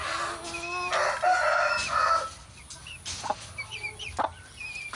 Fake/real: real